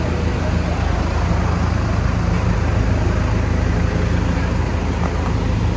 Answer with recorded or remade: recorded